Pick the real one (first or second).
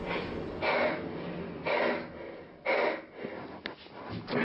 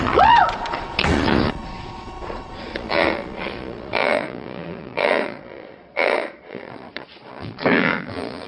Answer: first